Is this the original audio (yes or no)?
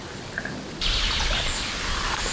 yes